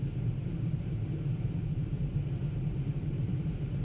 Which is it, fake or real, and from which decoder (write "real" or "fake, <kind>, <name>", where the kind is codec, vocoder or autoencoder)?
fake, vocoder, BigVGAN v2